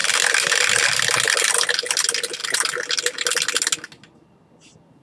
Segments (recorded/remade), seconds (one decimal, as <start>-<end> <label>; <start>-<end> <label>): 0.0-5.0 recorded